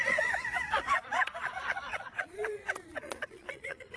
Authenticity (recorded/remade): remade